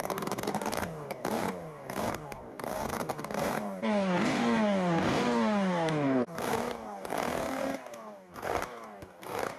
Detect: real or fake fake